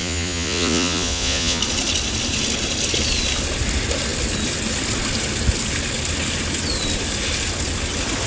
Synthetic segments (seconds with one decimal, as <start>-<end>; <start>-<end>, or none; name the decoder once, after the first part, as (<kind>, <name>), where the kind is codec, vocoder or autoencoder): 0.0-1.6 (vocoder, Vocos)